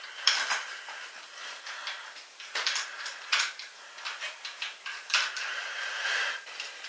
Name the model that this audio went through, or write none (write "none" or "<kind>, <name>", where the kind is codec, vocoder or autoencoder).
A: vocoder, BigVGAN v2